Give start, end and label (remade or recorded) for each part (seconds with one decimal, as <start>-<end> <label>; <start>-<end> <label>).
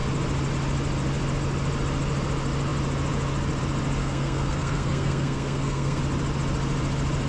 0.0-4.0 recorded; 4.0-6.0 remade; 6.0-7.3 recorded